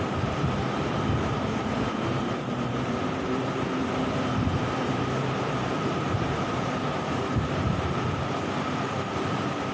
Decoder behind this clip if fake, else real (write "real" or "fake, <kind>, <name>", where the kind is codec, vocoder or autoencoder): fake, vocoder, BigVGAN v2